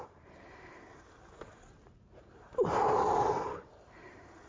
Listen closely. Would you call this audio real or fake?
fake